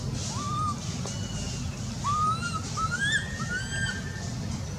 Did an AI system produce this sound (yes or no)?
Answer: no